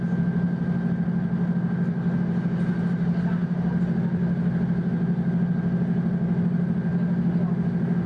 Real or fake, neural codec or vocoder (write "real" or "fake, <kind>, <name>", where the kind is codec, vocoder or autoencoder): real